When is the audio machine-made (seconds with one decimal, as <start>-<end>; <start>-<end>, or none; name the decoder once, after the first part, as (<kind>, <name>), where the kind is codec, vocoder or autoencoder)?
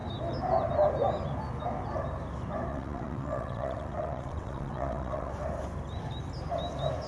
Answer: 2.7-5.3 (vocoder, WaveNeXt)